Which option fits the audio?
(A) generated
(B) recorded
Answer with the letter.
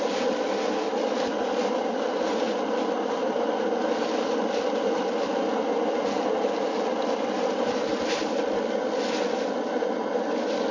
B